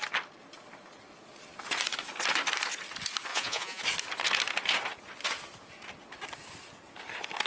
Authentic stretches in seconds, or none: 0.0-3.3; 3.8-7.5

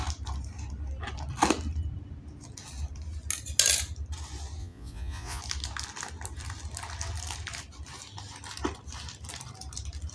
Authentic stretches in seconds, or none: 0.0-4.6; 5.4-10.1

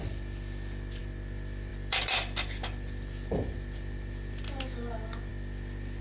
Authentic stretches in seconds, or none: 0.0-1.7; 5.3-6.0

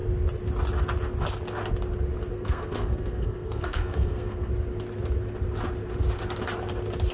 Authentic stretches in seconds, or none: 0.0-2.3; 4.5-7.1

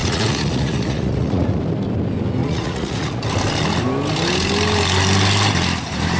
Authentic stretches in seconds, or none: 1.6-2.4; 3.2-6.2